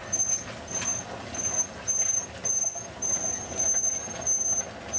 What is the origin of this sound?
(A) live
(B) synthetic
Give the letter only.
A